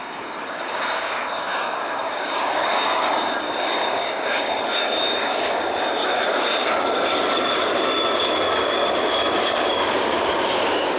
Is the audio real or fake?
fake